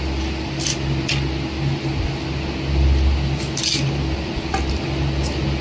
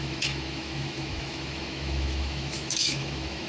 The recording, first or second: first